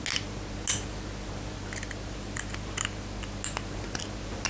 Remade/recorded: recorded